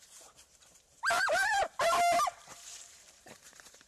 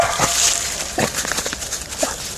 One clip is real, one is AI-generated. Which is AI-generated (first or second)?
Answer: first